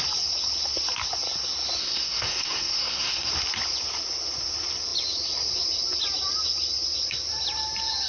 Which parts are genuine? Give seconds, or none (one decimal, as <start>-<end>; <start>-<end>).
0.0-1.8; 3.3-8.1